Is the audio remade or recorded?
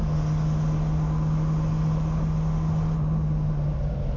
recorded